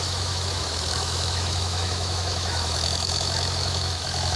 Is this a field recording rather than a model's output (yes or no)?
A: no